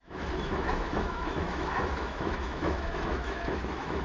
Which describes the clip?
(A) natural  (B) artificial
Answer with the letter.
B